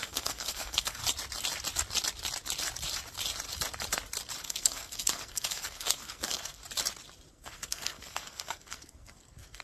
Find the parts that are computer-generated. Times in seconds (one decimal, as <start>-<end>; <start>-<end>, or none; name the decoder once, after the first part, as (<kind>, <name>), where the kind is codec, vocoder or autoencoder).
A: 0.0-1.0 (codec, SNAC); 4.4-6.6; 7.3-9.6